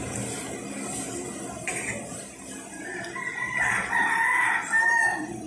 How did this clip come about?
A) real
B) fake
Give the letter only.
A